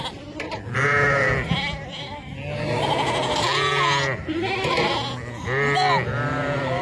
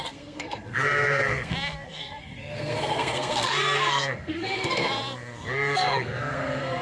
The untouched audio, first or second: first